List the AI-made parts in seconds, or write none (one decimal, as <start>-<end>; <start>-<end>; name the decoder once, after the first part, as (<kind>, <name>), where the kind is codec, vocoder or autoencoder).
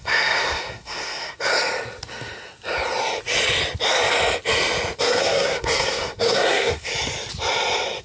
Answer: 0.0-1.5 (codec, SNAC); 5.0-6.9